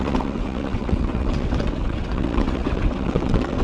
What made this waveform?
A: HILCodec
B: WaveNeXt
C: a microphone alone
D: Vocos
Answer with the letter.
B